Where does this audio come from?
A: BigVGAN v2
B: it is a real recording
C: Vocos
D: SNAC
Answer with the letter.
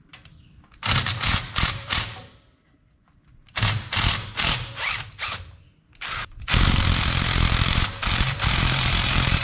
A